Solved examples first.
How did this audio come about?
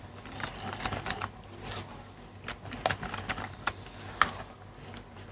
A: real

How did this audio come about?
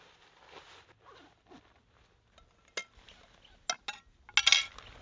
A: real